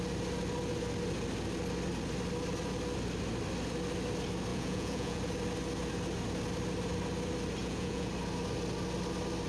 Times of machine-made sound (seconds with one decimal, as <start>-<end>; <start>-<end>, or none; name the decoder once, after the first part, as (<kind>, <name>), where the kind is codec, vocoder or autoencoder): 4.5-5.2 (vocoder, Vocos); 7.6-8.1